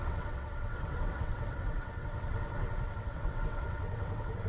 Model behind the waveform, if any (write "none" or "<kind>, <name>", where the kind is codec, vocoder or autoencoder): vocoder, WaveNeXt